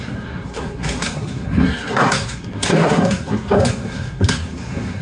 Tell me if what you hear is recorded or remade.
remade